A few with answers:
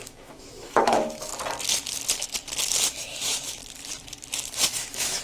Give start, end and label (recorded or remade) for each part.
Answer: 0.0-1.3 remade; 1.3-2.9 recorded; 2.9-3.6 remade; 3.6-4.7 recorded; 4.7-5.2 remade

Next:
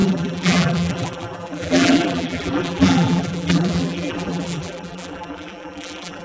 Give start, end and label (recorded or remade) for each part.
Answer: 0.0-6.2 remade